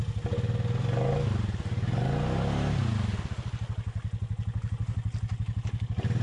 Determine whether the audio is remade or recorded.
recorded